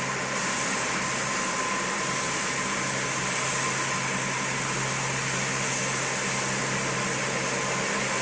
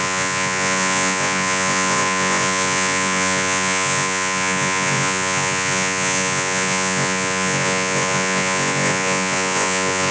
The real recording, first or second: first